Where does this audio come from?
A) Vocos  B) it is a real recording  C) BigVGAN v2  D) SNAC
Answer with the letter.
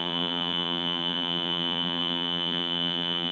C